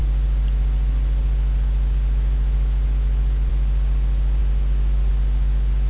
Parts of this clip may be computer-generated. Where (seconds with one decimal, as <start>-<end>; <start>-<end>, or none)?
none